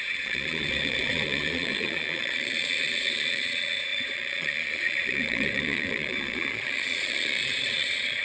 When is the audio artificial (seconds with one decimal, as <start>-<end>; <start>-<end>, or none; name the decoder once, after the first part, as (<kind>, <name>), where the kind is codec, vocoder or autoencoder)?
0.0-8.2 (vocoder, Vocos)